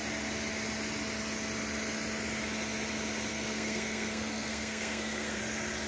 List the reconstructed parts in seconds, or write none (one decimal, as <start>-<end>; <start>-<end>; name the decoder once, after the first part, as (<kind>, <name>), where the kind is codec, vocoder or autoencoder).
3.3-5.4 (codec, SNAC)

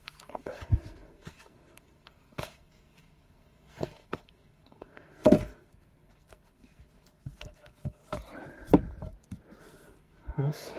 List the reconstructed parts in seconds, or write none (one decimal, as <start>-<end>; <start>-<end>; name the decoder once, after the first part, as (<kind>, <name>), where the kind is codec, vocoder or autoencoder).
0.0-8.0 (codec, SNAC); 9.6-10.8